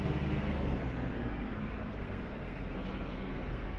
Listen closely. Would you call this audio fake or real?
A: fake